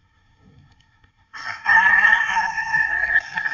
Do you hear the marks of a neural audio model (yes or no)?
yes